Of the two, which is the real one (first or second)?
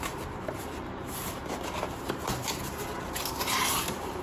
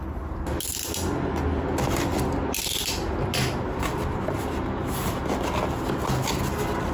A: second